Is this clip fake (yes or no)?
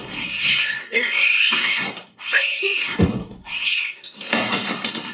yes